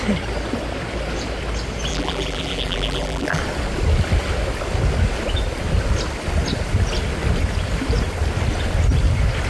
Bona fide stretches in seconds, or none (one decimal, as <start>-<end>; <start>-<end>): 0.0-1.9; 3.4-9.5